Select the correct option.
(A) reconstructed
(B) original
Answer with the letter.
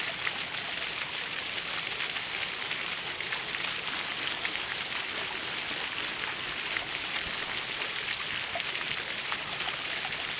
B